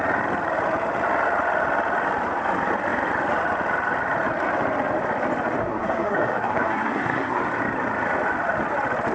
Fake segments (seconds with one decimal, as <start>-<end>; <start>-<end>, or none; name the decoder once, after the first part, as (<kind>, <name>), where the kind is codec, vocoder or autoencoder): 5.6-7.4 (codec, SNAC)